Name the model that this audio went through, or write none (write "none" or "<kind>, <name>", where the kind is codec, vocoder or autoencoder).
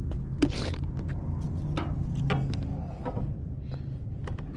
none